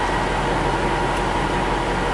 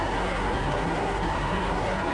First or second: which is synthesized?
second